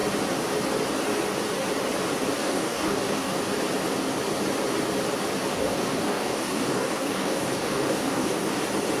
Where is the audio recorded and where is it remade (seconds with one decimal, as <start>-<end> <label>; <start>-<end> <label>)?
0.0-2.4 recorded; 2.4-3.4 remade; 3.4-5.5 recorded; 5.5-8.6 remade; 8.6-9.0 recorded